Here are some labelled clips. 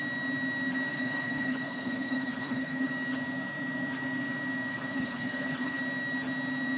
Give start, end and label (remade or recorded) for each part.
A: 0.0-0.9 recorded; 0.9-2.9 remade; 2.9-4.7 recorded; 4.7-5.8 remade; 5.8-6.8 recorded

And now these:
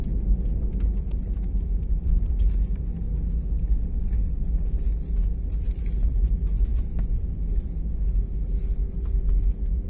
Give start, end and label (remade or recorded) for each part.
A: 0.0-9.9 recorded

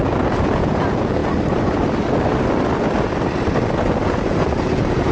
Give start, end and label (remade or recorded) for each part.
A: 0.0-1.2 remade; 1.2-3.8 recorded; 3.8-5.1 remade

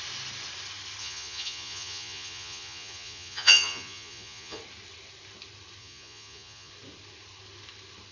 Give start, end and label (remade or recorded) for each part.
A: 0.0-1.0 recorded; 1.0-4.6 remade; 4.6-5.8 recorded; 5.8-6.7 remade; 6.7-8.1 recorded